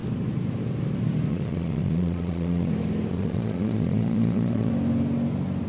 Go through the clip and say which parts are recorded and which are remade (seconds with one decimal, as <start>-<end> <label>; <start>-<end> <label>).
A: 0.0-1.3 recorded; 1.3-2.7 remade; 2.7-3.1 recorded; 3.1-4.7 remade; 4.7-5.7 recorded